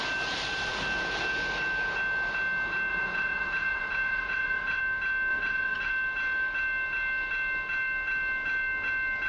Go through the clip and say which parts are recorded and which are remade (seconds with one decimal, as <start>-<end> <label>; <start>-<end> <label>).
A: 0.0-2.9 recorded; 2.9-4.8 remade; 4.8-5.3 recorded; 5.3-5.9 remade; 5.9-9.3 recorded